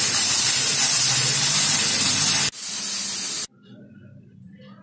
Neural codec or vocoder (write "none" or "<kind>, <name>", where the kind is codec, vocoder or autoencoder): none